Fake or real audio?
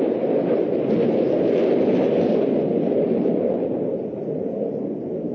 real